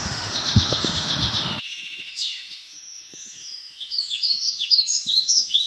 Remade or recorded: remade